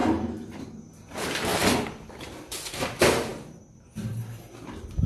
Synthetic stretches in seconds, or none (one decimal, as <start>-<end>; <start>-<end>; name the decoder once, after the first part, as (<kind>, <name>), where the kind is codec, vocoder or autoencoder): none